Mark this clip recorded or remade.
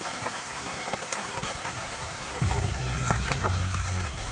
remade